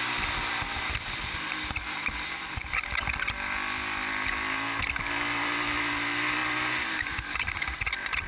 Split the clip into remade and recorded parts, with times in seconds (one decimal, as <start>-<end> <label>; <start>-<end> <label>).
0.0-8.3 recorded